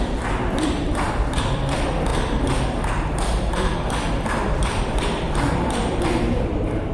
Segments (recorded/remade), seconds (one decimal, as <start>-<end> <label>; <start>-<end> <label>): 0.0-6.9 remade

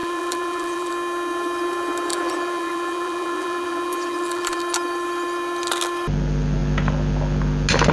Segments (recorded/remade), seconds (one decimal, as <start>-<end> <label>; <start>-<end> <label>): 0.0-0.9 remade; 0.9-2.1 recorded; 2.1-4.6 remade; 4.6-7.9 recorded